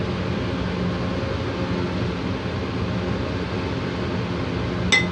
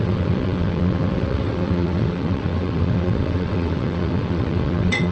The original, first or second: first